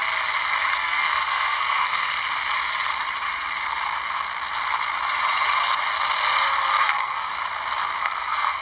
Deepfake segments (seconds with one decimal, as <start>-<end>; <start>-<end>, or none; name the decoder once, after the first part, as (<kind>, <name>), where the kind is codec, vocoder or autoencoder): 0.7-2.1 (codec, SNAC); 6.8-7.3; 8.0-8.6